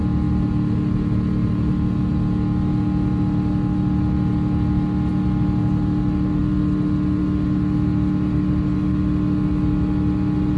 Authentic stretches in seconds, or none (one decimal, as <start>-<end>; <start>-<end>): 0.0-10.6